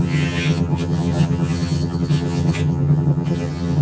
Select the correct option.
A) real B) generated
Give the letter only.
B